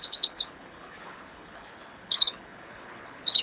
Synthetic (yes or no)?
yes